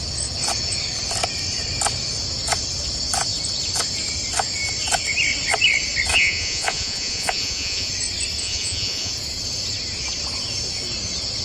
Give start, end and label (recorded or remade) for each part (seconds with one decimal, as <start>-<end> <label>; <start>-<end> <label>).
0.0-6.1 recorded; 6.1-7.9 remade; 7.9-8.4 recorded; 8.4-9.1 remade; 9.1-11.4 recorded